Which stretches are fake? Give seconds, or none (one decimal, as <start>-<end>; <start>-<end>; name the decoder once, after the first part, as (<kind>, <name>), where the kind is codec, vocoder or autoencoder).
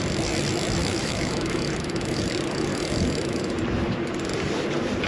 0.8-2.2 (autoencoder, DAC-VAE); 2.7-3.5